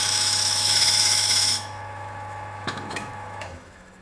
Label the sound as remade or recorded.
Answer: remade